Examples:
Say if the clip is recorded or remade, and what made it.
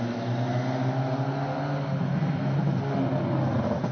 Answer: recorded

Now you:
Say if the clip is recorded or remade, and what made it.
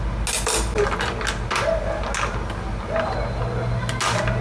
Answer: recorded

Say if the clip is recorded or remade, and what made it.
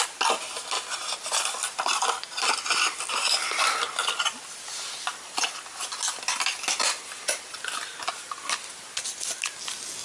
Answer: recorded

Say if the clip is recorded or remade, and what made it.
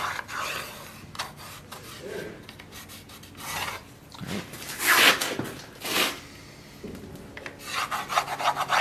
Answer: recorded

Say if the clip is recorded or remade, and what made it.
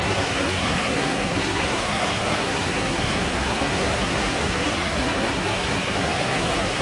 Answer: remade, codec, SNAC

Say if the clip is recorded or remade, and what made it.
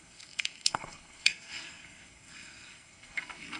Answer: remade, codec, SNAC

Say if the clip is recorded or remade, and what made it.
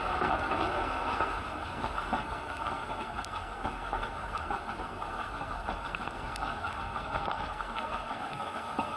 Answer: remade, codec, SNAC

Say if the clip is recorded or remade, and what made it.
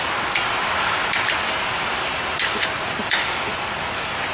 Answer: recorded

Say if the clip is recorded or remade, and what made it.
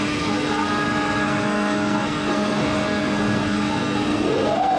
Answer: remade, codec, SNAC